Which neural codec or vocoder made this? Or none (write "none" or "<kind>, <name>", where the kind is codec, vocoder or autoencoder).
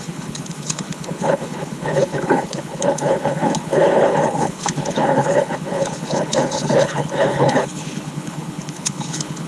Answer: codec, HILCodec